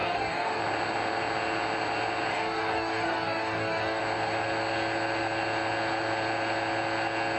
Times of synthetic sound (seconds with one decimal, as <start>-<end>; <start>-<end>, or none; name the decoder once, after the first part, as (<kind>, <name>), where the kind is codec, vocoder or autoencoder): 0.0-0.6 (codec, DAC); 2.3-4.0